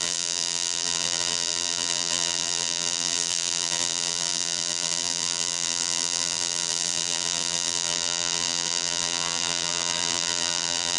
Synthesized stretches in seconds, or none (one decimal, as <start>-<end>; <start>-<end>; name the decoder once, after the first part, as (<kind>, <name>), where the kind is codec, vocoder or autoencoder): 0.0-11.0 (vocoder, BigVGAN v2)